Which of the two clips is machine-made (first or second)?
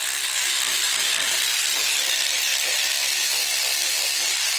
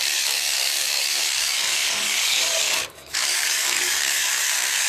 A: second